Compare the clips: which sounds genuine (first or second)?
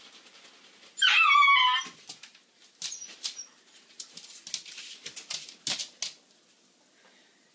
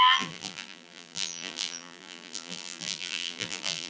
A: first